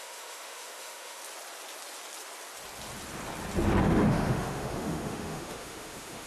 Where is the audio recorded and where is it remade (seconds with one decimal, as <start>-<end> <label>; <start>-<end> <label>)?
0.0-1.2 remade; 1.2-3.8 recorded; 3.8-6.3 remade